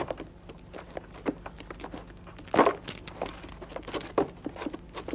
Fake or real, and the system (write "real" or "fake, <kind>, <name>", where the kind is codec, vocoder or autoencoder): real